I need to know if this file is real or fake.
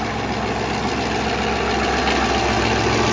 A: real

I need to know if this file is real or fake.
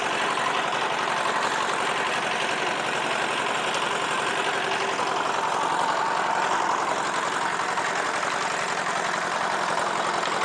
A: real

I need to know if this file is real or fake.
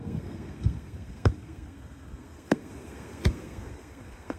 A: fake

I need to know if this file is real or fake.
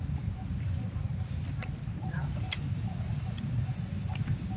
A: real